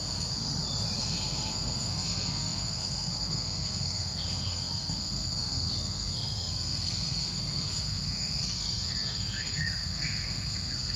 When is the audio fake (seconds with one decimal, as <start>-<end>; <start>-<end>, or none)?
0.0-0.5; 1.0-11.0